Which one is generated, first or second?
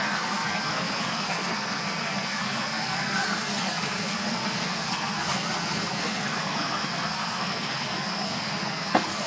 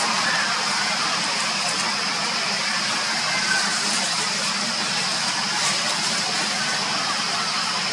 first